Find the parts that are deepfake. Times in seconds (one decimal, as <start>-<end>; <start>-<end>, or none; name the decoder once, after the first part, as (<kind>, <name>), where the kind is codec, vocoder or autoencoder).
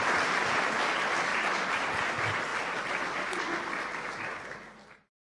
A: none